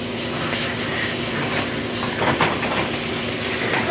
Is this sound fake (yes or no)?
no